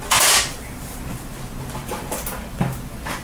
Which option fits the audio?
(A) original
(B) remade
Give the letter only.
A